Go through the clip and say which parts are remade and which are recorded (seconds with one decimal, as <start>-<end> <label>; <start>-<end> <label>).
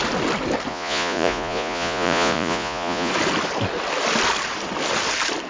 0.0-0.7 recorded; 0.7-3.1 remade; 3.1-5.5 recorded